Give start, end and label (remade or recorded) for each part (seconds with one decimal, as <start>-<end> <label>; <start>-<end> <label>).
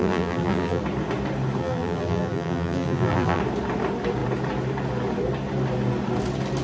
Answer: 0.0-0.8 remade; 0.8-1.6 recorded; 1.6-3.4 remade; 3.4-6.6 recorded